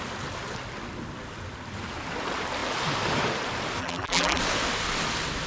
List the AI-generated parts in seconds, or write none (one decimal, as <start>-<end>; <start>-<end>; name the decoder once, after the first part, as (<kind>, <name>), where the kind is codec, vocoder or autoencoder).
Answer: 3.8-4.4 (vocoder, BigVGAN v2)